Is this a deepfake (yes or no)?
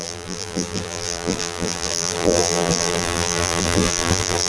yes